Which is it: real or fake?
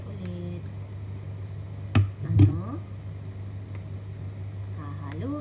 real